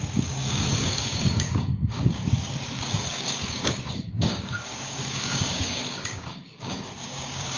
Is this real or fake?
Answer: fake